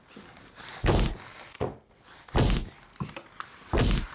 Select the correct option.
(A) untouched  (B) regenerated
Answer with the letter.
A